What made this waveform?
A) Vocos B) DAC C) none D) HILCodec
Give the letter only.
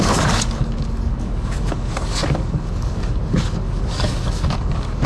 B